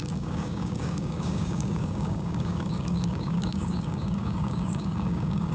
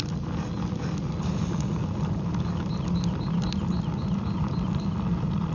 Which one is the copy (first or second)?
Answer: first